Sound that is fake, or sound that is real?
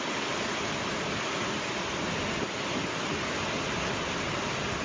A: real